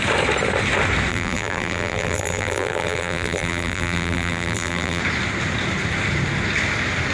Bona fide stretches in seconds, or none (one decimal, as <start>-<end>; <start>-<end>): 0.0-1.1; 5.0-7.1